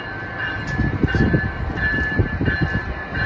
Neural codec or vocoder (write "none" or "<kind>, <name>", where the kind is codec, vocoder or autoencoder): none